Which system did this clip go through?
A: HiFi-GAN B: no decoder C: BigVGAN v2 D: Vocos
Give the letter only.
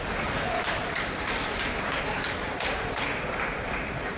C